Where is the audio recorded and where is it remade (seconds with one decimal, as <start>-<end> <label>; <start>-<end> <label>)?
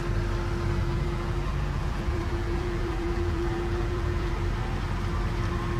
0.0-0.8 recorded; 0.8-4.3 remade; 4.3-5.8 recorded